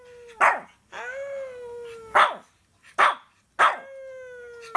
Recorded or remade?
recorded